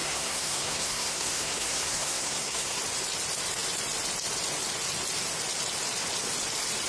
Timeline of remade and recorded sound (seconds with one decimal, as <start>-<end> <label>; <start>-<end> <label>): 0.0-2.8 remade; 2.8-6.9 recorded